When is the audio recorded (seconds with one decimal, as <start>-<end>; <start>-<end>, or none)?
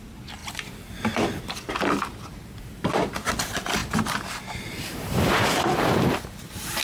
0.0-0.4; 1.4-2.3; 3.2-3.8